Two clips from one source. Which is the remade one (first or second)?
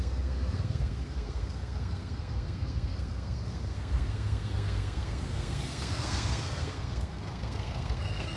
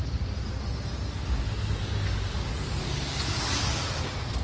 first